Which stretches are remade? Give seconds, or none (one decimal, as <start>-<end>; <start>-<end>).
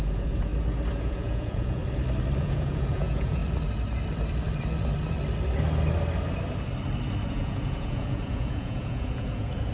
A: 0.0-0.5; 1.0-1.8; 2.4-3.4; 7.3-9.7